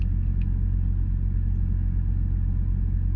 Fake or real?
real